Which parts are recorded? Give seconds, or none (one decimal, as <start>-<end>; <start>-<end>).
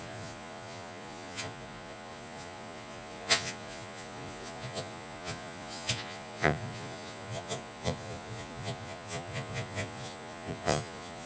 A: none